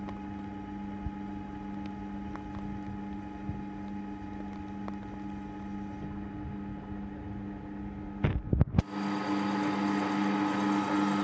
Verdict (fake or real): real